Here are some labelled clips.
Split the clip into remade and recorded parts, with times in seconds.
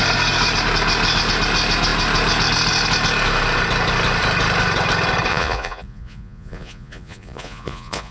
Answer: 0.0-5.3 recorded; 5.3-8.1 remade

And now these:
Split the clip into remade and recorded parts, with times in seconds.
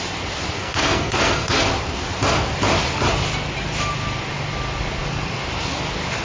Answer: 0.0-0.6 recorded; 0.6-1.7 remade; 1.7-6.2 recorded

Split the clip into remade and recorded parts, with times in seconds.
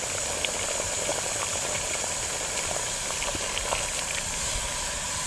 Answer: 0.0-1.1 recorded; 1.1-4.3 remade; 4.3-5.3 recorded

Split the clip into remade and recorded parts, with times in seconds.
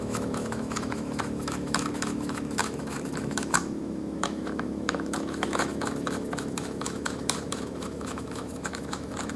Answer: 0.0-9.4 remade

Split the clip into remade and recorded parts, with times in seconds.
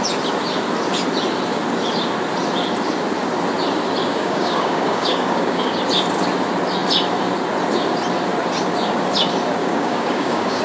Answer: 0.0-4.0 recorded; 4.0-5.8 remade; 5.8-9.6 recorded; 9.6-10.6 remade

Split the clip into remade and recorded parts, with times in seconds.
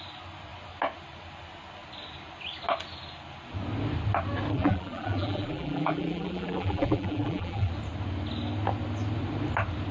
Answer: 0.0-4.5 recorded; 4.5-7.7 remade; 7.7-9.9 recorded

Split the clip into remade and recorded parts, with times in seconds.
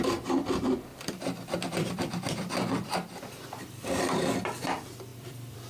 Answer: 0.0-0.9 recorded; 0.9-4.3 remade; 4.3-5.1 recorded; 5.1-5.7 remade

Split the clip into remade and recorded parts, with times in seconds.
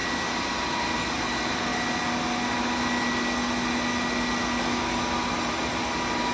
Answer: 0.0-6.3 recorded